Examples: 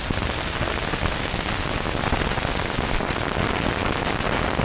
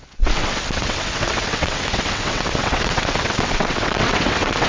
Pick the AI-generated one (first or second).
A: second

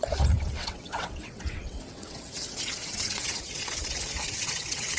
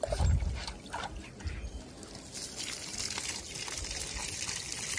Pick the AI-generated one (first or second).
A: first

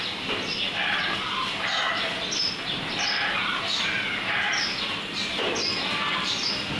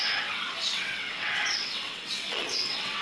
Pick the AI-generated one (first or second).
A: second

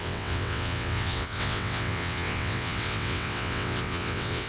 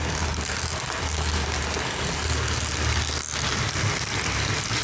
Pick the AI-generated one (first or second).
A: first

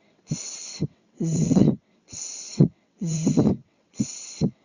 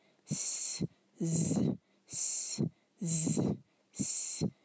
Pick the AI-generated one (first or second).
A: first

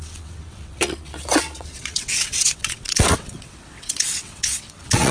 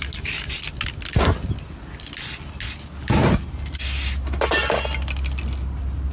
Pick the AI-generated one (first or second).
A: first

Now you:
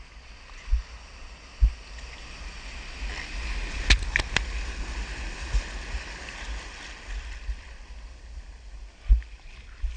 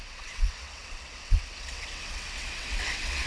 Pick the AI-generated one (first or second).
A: second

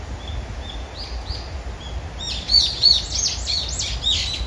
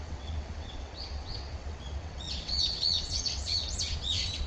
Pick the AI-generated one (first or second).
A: second